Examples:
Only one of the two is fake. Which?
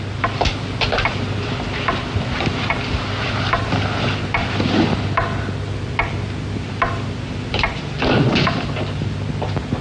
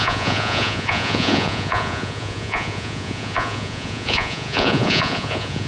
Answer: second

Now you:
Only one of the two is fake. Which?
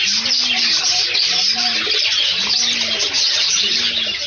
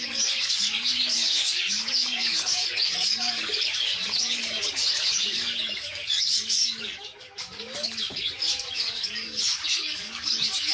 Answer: second